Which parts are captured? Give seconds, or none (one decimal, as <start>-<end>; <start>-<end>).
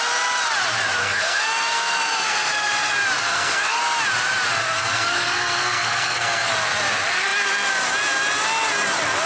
0.0-1.0; 2.9-3.3; 3.8-4.6; 6.5-9.3